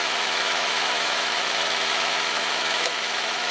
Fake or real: fake